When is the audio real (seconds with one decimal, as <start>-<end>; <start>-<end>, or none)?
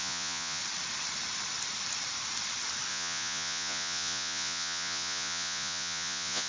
0.6-2.9